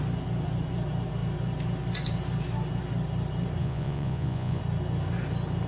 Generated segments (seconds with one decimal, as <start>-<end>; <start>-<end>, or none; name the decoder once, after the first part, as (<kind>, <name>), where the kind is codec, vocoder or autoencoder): 3.6-4.6 (vocoder, Vocos)